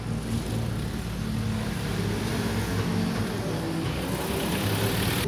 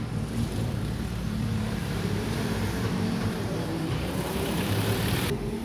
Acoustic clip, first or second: first